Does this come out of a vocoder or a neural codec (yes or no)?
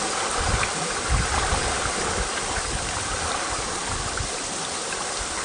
no